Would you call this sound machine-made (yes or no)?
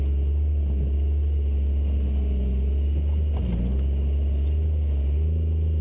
no